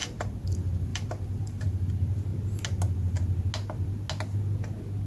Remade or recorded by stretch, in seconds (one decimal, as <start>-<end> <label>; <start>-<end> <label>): 0.0-0.5 remade; 0.5-0.9 recorded; 0.9-1.9 remade; 1.9-5.1 recorded